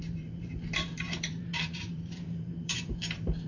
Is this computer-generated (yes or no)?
yes